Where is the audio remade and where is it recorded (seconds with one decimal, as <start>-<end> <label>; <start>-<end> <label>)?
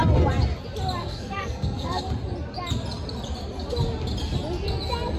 0.0-1.0 recorded; 1.0-2.0 remade; 2.0-5.2 recorded